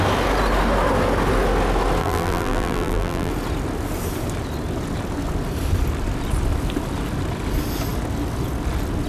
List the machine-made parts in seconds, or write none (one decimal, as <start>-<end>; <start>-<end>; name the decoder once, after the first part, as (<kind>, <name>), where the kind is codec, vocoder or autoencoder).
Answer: 2.0-3.3 (vocoder, BigVGAN v2)